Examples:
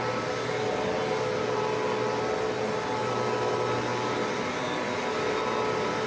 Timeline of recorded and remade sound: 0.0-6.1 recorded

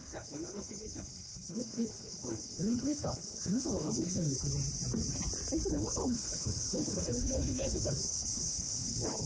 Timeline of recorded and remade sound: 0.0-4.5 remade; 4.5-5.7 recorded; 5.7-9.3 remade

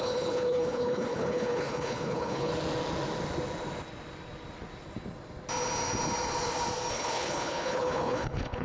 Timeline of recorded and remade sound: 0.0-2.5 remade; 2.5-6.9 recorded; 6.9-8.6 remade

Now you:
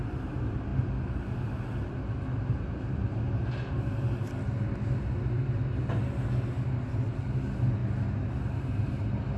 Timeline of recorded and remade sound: 0.0-9.4 recorded

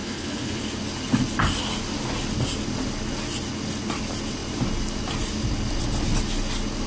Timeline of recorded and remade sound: 0.0-0.6 remade; 0.6-6.9 recorded

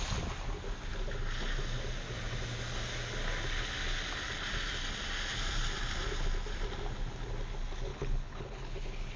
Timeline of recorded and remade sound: 0.0-7.9 recorded; 7.9-9.2 remade

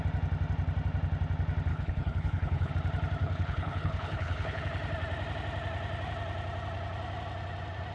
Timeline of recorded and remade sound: 0.0-1.7 recorded; 1.7-2.7 remade; 2.7-3.2 recorded; 3.2-4.6 remade; 4.6-7.9 recorded

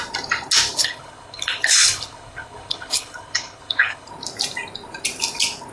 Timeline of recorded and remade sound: 0.0-0.8 recorded; 0.8-4.1 remade; 4.1-5.7 recorded